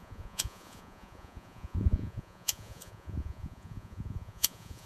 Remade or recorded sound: remade